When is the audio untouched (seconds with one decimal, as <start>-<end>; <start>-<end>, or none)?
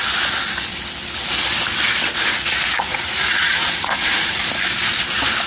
0.0-2.9; 4.5-5.5